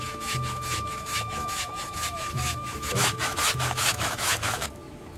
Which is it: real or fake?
fake